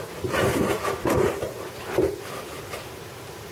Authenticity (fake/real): real